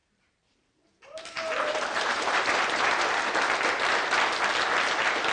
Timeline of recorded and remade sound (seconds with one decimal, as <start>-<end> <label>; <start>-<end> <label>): 0.0-3.0 remade; 3.0-5.3 recorded